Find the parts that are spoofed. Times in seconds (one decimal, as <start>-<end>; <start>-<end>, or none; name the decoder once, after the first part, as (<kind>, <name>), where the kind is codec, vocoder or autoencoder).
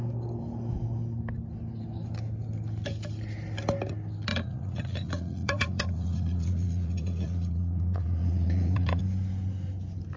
4.3-9.0 (vocoder, Vocos)